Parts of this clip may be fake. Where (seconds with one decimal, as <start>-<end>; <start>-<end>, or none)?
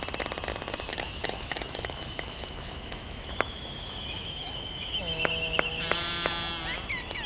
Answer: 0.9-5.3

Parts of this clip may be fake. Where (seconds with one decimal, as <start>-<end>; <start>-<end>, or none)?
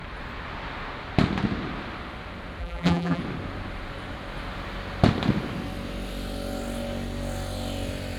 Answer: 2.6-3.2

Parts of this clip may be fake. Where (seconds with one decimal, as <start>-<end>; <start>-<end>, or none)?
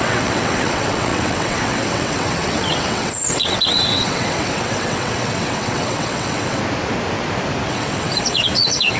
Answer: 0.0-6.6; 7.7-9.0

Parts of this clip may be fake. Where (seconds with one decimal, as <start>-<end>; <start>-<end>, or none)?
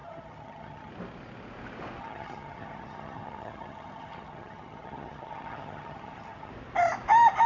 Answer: 0.0-0.9; 2.0-6.5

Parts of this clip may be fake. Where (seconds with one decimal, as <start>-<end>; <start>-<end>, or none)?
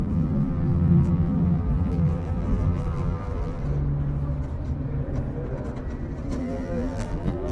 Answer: 0.0-3.6; 6.4-7.5